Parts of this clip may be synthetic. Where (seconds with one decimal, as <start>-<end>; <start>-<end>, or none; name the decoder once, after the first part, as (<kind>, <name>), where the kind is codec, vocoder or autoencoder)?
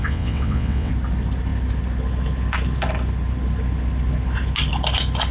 0.0-0.9 (vocoder, WaveNeXt)